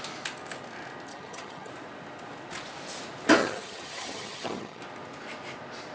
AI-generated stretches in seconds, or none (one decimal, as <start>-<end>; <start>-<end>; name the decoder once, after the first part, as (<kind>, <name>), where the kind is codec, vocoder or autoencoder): 1.1-1.7 (vocoder, HiFi-GAN); 3.4-4.8